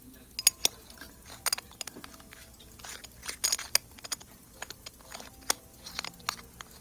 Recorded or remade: recorded